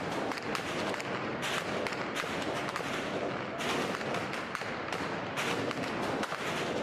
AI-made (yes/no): no